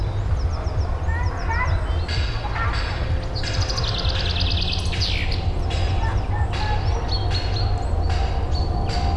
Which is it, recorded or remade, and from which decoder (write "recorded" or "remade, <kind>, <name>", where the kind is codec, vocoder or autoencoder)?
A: recorded